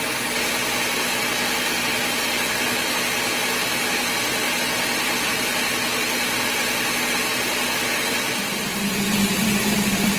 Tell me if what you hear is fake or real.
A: real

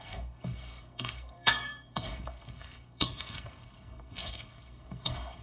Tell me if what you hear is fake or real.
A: fake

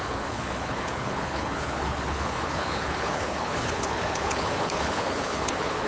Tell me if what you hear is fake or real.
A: fake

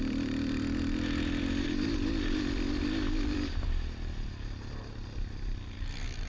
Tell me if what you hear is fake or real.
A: fake